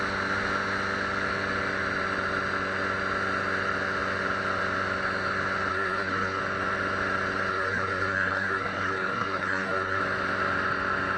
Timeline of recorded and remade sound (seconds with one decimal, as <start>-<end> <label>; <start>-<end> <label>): 0.0-5.7 recorded; 5.7-6.4 remade; 6.4-7.5 recorded; 7.5-10.0 remade; 10.0-11.2 recorded